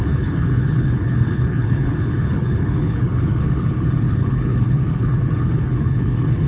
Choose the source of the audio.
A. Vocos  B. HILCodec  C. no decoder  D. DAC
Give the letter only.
B